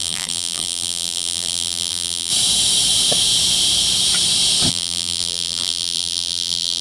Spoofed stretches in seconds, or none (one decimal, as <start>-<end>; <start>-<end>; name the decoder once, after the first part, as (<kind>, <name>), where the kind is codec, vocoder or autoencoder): 0.0-2.3 (vocoder, BigVGAN v2); 4.7-6.8